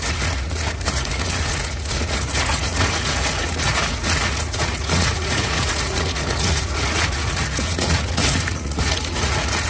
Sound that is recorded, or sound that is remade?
remade